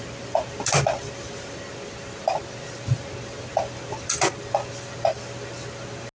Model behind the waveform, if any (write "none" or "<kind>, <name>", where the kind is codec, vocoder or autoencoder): none